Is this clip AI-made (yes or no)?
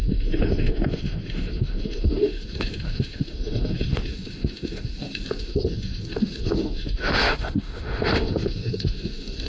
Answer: yes